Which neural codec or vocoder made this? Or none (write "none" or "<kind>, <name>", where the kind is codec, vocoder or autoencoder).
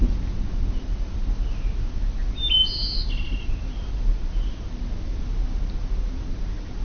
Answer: none